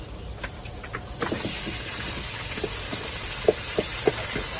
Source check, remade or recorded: recorded